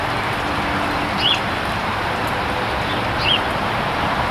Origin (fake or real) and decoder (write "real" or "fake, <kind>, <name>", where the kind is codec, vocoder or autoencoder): real